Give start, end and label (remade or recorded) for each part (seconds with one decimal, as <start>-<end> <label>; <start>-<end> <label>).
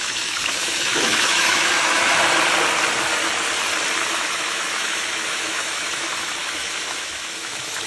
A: 0.0-2.1 remade; 2.1-4.1 recorded; 4.1-7.9 remade